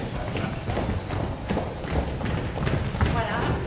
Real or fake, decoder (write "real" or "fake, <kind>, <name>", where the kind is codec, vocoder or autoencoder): fake, vocoder, BigVGAN v2